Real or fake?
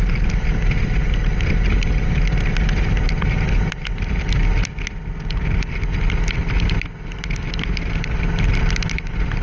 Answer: real